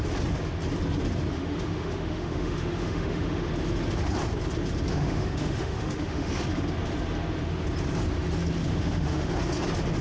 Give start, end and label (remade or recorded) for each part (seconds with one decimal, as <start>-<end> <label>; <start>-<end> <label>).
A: 0.0-1.3 recorded; 1.3-3.5 remade; 3.5-4.9 recorded; 4.9-6.3 remade; 6.3-8.6 recorded; 8.6-9.3 remade; 9.3-10.0 recorded